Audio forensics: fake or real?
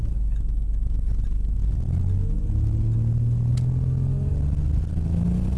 real